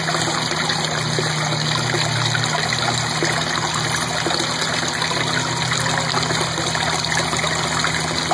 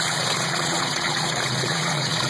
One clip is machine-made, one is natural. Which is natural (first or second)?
first